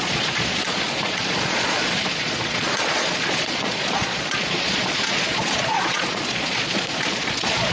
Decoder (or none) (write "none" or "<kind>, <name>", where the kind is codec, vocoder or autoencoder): vocoder, Vocos